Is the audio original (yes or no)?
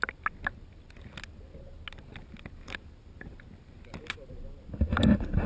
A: yes